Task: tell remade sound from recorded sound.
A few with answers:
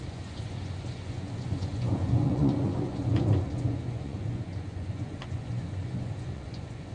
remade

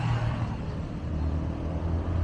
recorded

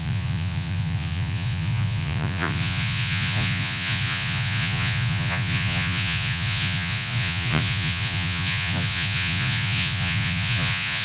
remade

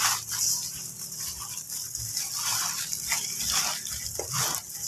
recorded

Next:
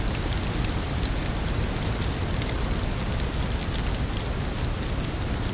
recorded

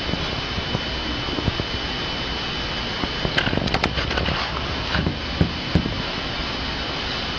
recorded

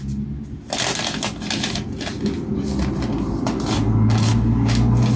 recorded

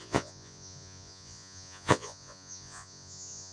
remade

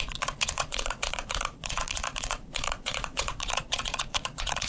remade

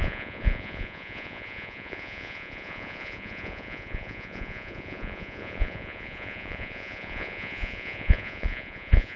remade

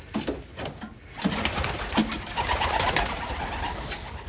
recorded